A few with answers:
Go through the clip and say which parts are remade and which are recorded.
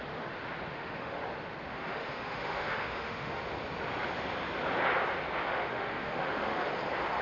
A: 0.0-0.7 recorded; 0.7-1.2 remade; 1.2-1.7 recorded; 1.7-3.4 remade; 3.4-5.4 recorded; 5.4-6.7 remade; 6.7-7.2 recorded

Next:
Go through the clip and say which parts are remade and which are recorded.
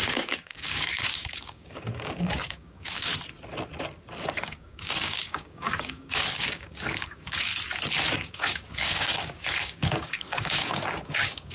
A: 0.0-3.1 remade; 3.1-4.2 recorded; 4.2-7.5 remade; 7.5-8.1 recorded; 8.1-11.5 remade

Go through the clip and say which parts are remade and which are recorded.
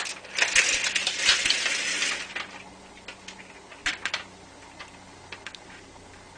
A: 0.0-1.0 recorded; 1.0-2.0 remade; 2.0-3.8 recorded; 3.8-5.9 remade; 5.9-6.4 recorded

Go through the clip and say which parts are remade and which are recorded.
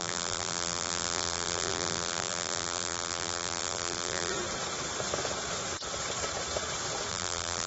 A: 0.0-4.3 remade; 4.3-7.1 recorded; 7.1-7.7 remade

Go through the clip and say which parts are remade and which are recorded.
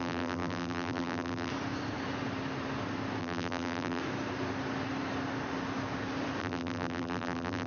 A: 0.0-1.5 remade; 1.5-3.2 recorded; 3.2-4.0 remade; 4.0-6.4 recorded; 6.4-7.7 remade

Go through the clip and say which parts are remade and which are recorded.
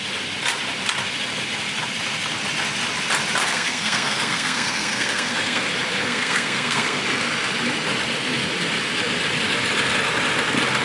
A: 0.0-3.4 recorded; 3.4-5.6 remade; 5.6-6.0 recorded; 6.0-7.0 remade; 7.0-10.8 recorded